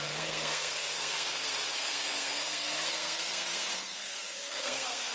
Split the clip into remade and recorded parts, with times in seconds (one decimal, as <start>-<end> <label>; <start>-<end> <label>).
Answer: 0.0-5.1 remade